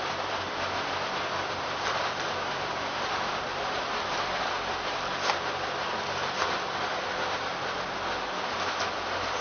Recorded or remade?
recorded